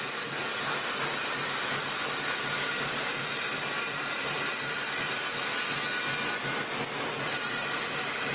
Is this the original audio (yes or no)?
yes